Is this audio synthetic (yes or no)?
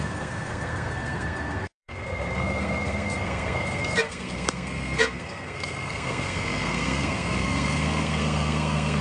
yes